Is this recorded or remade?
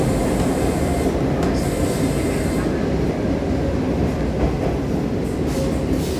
recorded